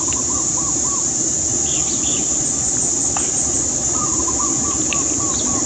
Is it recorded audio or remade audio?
recorded